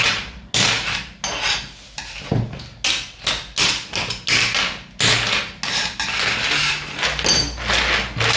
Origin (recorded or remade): recorded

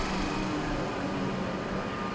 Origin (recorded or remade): recorded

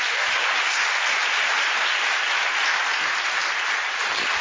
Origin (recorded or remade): recorded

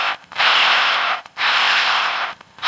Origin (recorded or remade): remade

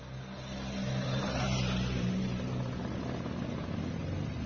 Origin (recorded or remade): recorded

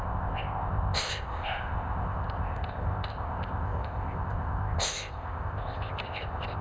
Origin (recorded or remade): remade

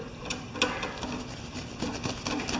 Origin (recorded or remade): recorded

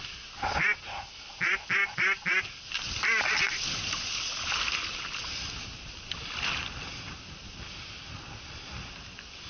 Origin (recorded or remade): recorded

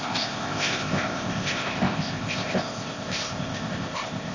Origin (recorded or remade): remade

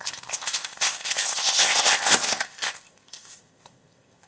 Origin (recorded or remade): remade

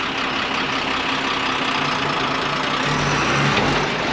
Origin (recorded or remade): recorded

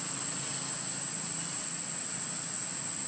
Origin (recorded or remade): recorded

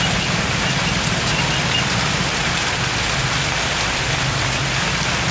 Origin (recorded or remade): recorded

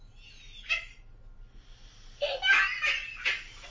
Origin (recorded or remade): recorded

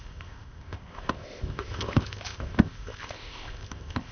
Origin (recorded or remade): remade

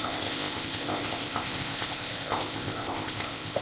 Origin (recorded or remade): remade